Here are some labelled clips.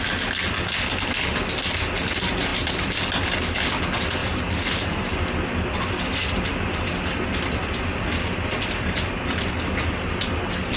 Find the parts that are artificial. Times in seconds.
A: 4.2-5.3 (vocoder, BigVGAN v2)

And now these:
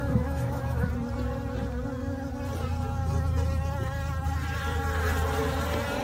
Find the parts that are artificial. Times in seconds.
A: 0.0-0.9 (autoencoder, DAC-VAE)

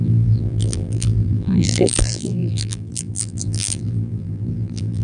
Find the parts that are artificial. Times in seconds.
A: 0.0-5.0 (vocoder, BigVGAN v2)

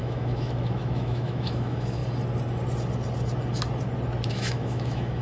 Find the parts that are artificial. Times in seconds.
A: 0.0-2.0 (autoencoder, DAC-VAE); 4.3-5.2

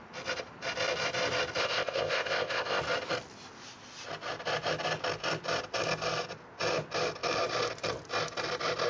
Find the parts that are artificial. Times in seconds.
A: 1.6-2.8 (codec, ZipCodec)